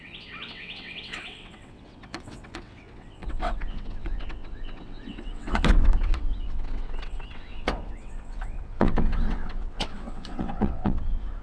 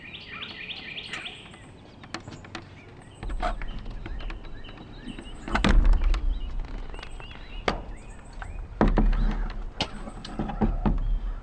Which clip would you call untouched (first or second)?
second